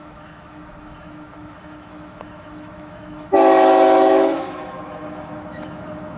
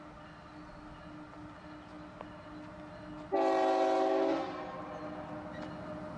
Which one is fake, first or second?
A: first